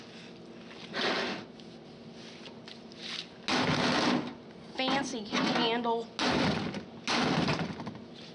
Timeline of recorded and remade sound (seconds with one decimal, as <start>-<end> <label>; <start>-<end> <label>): 0.0-8.3 recorded